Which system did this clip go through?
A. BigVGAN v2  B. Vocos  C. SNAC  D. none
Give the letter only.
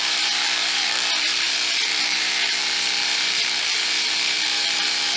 A